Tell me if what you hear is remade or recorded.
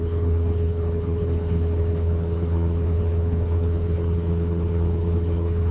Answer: remade